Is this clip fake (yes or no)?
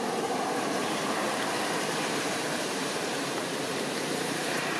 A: yes